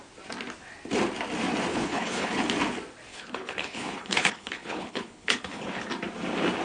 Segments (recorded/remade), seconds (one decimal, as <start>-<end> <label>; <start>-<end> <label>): 0.0-1.7 recorded; 1.7-2.4 remade; 2.4-3.1 recorded; 3.1-5.8 remade; 5.8-6.6 recorded